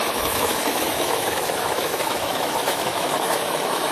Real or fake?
fake